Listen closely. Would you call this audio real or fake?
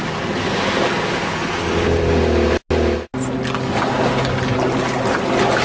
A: real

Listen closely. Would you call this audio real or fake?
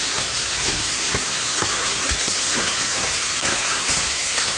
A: fake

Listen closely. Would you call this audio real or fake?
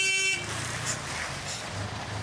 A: real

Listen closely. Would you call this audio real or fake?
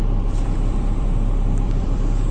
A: fake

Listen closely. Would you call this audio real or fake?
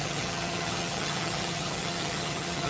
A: fake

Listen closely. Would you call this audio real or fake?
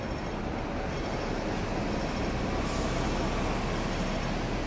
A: real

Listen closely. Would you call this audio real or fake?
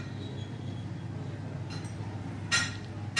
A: real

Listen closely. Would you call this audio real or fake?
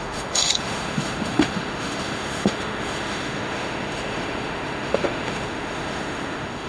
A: fake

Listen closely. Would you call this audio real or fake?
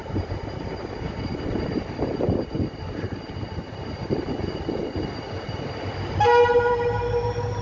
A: fake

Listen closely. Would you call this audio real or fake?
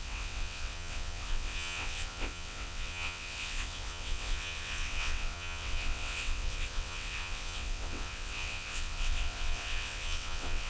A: fake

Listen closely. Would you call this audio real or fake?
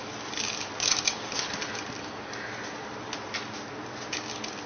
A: real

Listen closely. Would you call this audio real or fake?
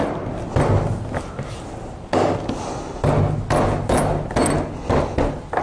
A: real